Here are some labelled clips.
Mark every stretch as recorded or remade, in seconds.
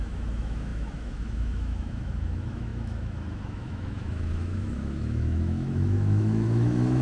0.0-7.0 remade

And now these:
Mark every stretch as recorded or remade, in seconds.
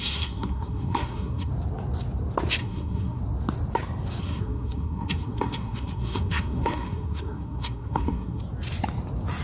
0.0-1.5 remade; 1.5-2.6 recorded; 2.6-3.2 remade; 3.2-4.2 recorded; 4.2-8.4 remade; 8.4-9.4 recorded